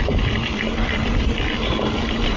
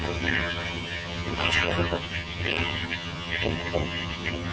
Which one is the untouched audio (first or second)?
first